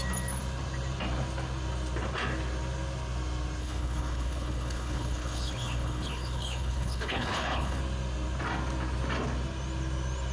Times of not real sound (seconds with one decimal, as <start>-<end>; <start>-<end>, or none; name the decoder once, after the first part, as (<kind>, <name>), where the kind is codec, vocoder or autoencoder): 3.6-7.8 (codec, HILCodec)